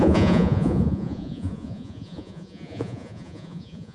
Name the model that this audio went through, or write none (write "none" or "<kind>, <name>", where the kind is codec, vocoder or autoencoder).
vocoder, Vocos